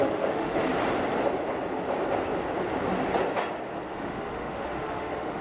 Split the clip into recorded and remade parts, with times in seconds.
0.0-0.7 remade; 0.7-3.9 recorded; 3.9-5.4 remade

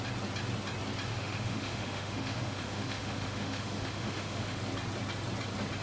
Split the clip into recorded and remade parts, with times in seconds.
0.0-1.1 recorded; 1.1-4.6 remade; 4.6-5.8 recorded

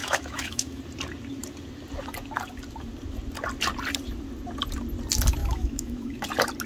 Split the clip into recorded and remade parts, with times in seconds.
0.0-0.8 remade; 0.8-5.4 recorded; 5.4-6.2 remade; 6.2-6.7 recorded

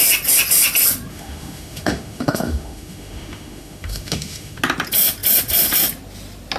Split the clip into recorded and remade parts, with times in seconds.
0.0-1.1 recorded; 1.1-4.6 remade; 4.6-6.6 recorded

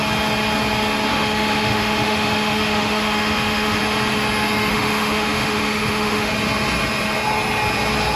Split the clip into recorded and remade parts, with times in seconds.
0.0-1.1 recorded; 1.1-3.8 remade; 3.8-4.7 recorded; 4.7-6.3 remade; 6.3-8.2 recorded

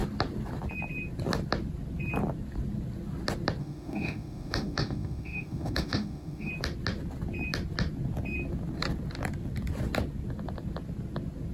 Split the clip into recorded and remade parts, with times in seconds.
0.0-3.6 recorded; 3.6-6.5 remade; 6.5-11.5 recorded